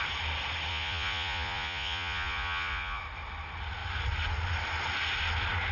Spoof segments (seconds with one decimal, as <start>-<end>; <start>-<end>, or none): 0.7-3.0